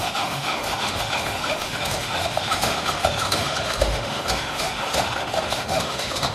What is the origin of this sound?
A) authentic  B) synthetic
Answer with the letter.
B